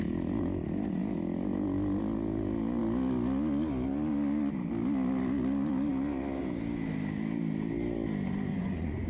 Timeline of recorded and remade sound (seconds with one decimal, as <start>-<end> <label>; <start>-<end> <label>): 0.0-8.5 recorded; 8.5-9.1 remade